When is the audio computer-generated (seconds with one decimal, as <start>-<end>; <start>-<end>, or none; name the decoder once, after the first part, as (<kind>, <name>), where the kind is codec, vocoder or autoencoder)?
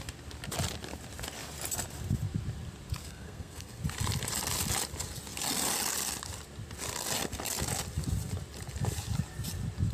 3.0-3.8 (codec, SNAC)